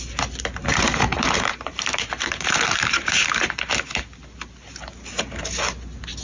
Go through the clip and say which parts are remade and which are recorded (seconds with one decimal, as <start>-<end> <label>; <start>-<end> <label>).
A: 0.0-1.1 recorded; 1.1-3.6 remade; 3.6-6.2 recorded